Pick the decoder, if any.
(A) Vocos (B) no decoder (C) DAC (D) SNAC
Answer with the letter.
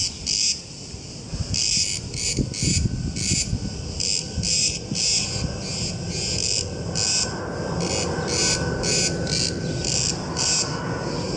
B